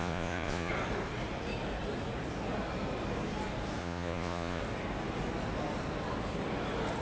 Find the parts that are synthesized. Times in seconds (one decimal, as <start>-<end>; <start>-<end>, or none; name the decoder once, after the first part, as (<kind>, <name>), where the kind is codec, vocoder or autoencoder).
0.0-0.7 (vocoder, Vocos); 3.8-4.6